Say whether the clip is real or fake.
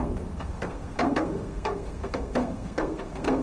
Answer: fake